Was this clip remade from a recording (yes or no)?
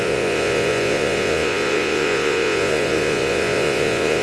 yes